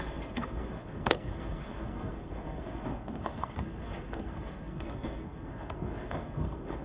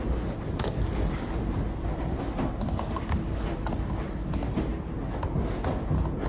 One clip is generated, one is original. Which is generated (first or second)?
first